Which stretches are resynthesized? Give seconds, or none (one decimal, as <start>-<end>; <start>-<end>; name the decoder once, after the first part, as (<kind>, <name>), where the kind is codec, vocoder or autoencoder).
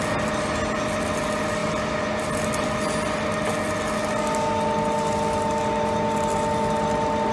none